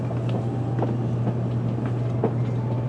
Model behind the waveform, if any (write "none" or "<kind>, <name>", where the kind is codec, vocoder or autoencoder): none